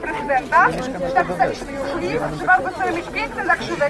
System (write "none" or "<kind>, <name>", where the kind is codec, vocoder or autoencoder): none